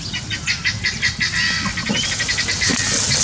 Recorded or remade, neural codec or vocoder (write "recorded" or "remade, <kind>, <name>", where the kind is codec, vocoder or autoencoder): recorded